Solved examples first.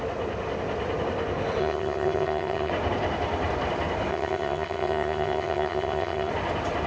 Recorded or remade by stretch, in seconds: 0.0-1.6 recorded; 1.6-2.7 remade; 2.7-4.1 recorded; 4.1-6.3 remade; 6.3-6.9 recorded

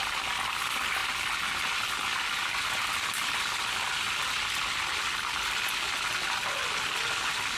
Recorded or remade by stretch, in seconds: 0.0-7.6 recorded

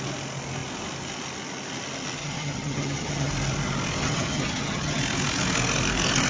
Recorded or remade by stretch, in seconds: 0.0-2.2 recorded; 2.2-3.3 remade; 3.3-4.0 recorded; 4.0-5.0 remade; 5.0-6.3 recorded

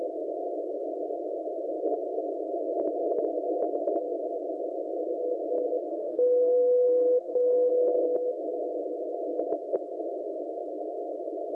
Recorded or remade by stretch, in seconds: 0.0-5.9 recorded; 5.9-7.7 remade; 7.7-11.5 recorded